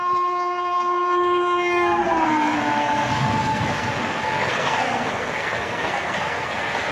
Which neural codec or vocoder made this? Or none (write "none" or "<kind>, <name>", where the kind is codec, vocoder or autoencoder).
codec, SNAC